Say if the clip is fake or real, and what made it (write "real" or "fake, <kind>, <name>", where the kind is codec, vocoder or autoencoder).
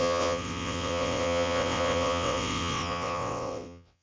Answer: fake, vocoder, WaveNeXt